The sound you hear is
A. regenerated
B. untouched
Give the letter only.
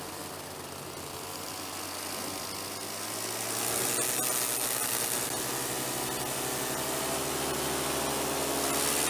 B